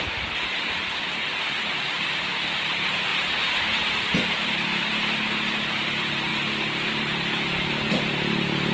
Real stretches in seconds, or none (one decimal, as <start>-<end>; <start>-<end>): 0.0-8.7